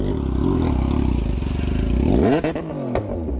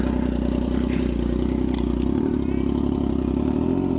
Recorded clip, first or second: first